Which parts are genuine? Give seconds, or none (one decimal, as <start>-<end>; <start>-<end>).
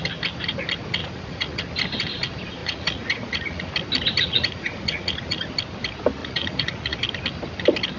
0.0-1.0; 1.6-2.6; 3.7-4.2; 5.5-6.2; 7.0-8.0